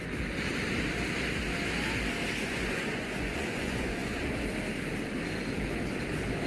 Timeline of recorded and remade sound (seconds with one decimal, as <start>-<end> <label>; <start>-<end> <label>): 0.0-2.4 recorded; 2.4-4.2 remade; 4.2-6.5 recorded